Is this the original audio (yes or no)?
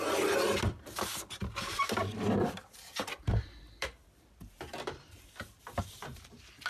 no